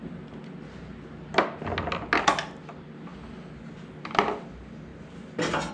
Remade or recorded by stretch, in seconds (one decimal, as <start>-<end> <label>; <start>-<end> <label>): 0.0-5.7 recorded